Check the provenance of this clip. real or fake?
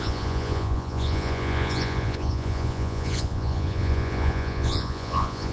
fake